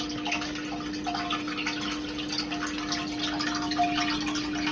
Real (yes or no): yes